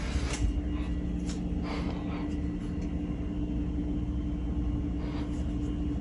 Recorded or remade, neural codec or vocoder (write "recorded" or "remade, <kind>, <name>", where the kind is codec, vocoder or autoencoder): recorded